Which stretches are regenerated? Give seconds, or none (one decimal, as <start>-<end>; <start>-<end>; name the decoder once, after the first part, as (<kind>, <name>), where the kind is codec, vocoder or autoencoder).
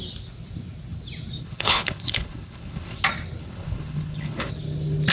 1.4-3.0 (codec, HILCodec); 3.4-4.5